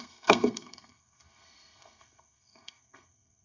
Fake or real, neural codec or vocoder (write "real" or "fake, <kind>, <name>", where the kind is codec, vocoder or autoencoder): fake, codec, SNAC